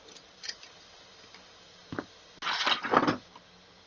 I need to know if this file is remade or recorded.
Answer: recorded